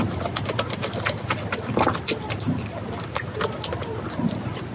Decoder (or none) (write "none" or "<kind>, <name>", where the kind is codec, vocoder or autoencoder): none